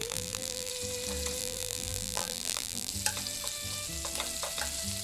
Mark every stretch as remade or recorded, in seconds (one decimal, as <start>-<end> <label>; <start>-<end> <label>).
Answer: 0.0-0.7 remade; 0.7-1.4 recorded; 1.4-2.9 remade; 2.9-5.0 recorded